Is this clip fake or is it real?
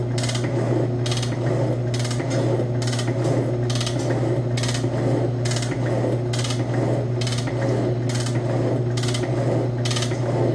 real